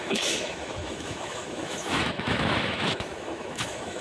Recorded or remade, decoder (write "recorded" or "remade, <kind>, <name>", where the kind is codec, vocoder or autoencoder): remade, autoencoder, DAC-VAE